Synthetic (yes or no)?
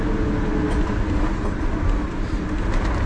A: no